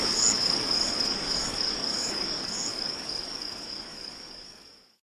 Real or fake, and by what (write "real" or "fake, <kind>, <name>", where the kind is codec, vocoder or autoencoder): fake, codec, DAC